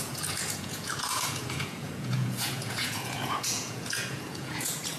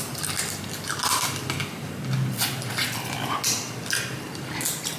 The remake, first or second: first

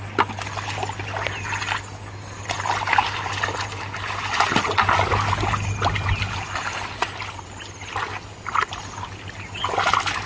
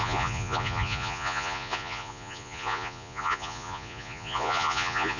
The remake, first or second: second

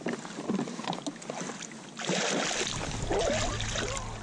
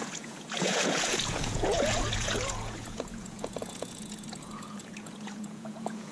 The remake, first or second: second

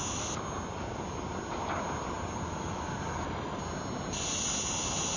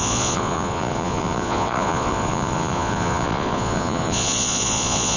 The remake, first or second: second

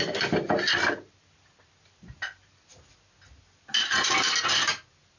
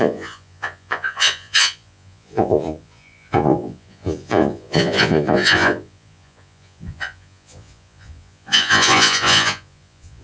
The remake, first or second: second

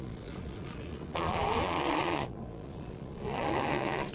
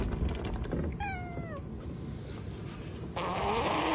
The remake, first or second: first